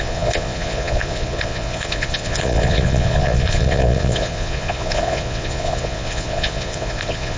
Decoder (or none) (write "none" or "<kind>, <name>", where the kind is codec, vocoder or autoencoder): vocoder, Vocos